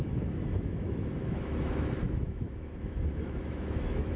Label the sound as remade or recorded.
remade